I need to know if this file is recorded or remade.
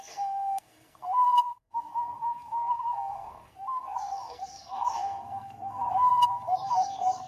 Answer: remade